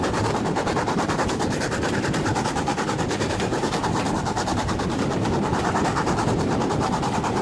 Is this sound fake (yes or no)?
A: yes